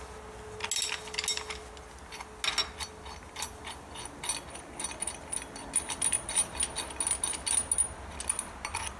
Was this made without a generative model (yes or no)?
yes